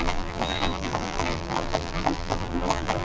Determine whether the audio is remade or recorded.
remade